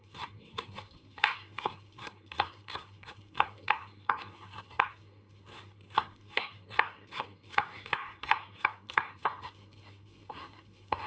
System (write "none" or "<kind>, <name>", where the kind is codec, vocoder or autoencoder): codec, SNAC